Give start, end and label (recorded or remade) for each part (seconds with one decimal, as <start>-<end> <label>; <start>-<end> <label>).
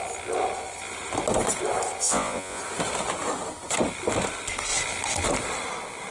0.0-2.0 recorded; 2.0-2.6 remade; 2.6-6.1 recorded